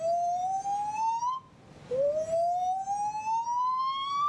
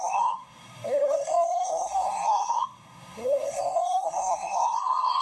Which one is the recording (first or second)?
first